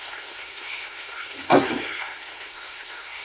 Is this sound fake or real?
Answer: fake